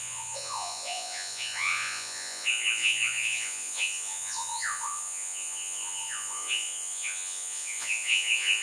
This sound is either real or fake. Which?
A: fake